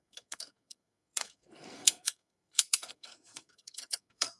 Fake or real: fake